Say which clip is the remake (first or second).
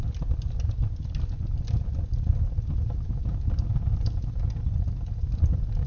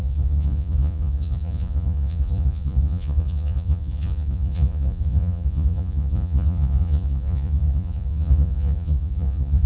second